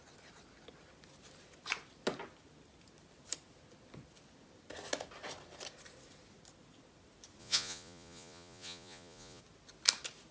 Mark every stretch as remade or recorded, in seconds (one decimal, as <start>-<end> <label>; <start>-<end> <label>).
0.0-7.4 recorded; 7.4-9.4 remade; 9.4-10.3 recorded